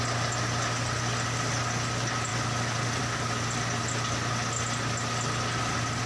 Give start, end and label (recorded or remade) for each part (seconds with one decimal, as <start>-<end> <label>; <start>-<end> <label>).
0.0-6.1 recorded